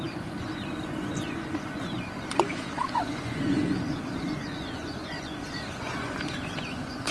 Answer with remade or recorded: remade